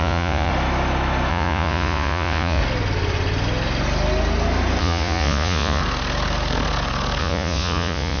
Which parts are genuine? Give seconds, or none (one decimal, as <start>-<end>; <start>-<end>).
0.5-1.3; 2.6-4.8; 5.8-7.2